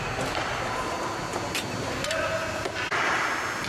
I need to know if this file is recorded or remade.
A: recorded